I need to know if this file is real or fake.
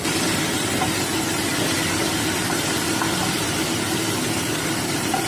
fake